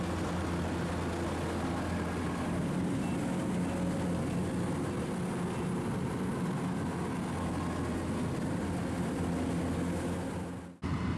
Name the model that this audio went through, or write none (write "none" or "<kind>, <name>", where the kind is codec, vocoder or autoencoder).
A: none